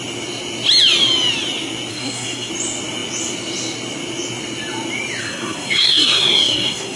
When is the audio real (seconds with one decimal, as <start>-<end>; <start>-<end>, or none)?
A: 0.0-1.9; 2.5-5.2